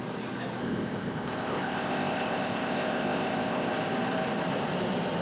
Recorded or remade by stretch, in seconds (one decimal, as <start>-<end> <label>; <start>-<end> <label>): 0.0-0.6 recorded; 0.6-3.7 remade; 3.7-5.2 recorded